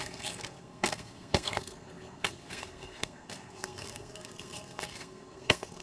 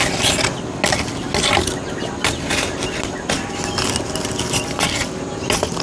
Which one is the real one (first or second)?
second